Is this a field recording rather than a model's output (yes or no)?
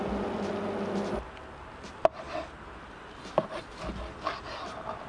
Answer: yes